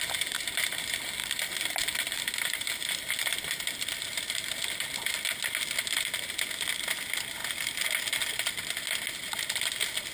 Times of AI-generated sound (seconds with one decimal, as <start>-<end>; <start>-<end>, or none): 1.2-4.0